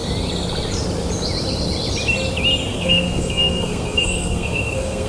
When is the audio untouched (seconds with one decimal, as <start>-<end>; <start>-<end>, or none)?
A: 0.0-2.7